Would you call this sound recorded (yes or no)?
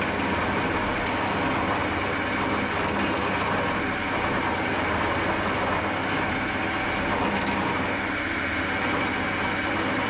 yes